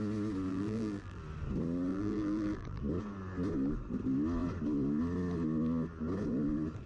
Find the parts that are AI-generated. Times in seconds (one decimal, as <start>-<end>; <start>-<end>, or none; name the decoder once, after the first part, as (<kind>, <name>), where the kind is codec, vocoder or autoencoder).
0.5-1.2 (vocoder, BigVGAN v2); 1.9-2.8